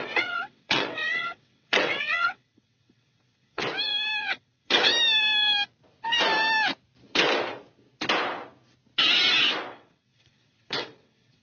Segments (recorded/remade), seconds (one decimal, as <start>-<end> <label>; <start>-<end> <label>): 0.0-3.6 remade; 3.6-4.2 recorded; 4.2-4.9 remade; 4.9-9.7 recorded; 9.7-11.4 remade

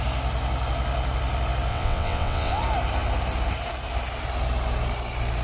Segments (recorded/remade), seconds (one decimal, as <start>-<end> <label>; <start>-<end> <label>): 0.0-1.7 recorded; 1.7-2.6 remade; 2.6-5.4 recorded

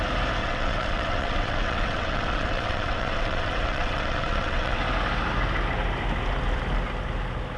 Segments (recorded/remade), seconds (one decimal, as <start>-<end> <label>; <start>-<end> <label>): 0.0-0.4 recorded; 0.4-4.8 remade; 4.8-7.6 recorded

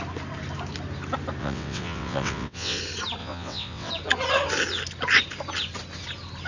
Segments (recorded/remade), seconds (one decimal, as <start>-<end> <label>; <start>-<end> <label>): 0.0-1.4 recorded; 1.4-2.8 remade; 2.8-3.2 recorded; 3.2-3.9 remade; 3.9-6.5 recorded

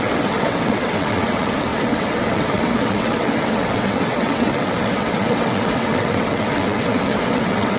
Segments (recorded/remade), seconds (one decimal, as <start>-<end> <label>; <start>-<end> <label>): 0.0-7.8 remade

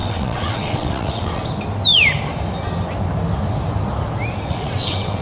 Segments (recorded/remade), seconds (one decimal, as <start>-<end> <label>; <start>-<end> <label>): 0.0-1.4 remade; 1.4-4.5 recorded; 4.5-5.2 remade

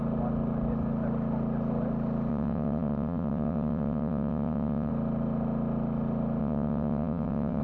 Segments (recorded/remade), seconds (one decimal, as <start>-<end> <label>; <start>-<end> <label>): 0.0-2.3 recorded; 2.3-4.9 remade; 4.9-6.4 recorded; 6.4-7.6 remade

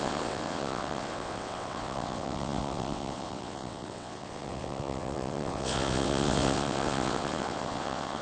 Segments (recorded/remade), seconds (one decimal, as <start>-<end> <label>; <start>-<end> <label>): 0.0-8.2 remade